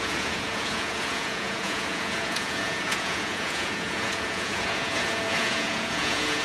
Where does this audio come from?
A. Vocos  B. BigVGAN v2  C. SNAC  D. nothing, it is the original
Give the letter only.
A